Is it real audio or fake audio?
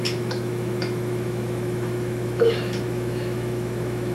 fake